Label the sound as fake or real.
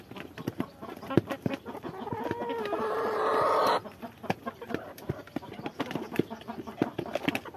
real